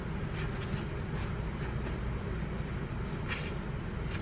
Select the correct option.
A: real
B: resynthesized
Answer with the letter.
A